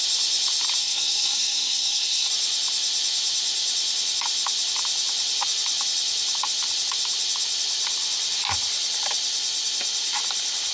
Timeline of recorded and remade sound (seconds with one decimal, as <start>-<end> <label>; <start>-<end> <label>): 0.0-0.8 recorded; 0.8-2.3 remade; 2.3-10.7 recorded